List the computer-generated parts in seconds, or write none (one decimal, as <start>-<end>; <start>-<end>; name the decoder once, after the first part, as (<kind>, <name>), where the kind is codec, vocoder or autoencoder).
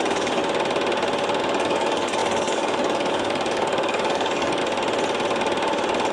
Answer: 0.0-0.4 (codec, DAC); 1.4-4.6